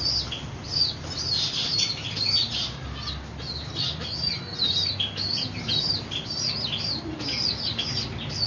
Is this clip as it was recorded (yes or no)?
yes